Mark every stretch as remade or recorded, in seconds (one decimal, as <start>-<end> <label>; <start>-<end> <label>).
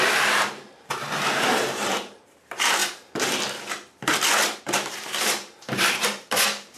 0.0-2.8 remade; 2.8-4.6 recorded; 4.6-6.8 remade